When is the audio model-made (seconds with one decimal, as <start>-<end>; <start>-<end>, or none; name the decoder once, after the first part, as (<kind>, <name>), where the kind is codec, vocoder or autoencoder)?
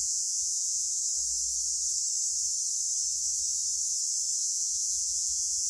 0.0-1.0 (vocoder, Vocos); 4.4-5.7